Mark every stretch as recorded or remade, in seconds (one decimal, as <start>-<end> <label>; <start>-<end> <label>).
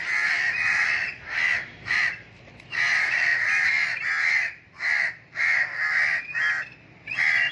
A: 0.0-7.5 remade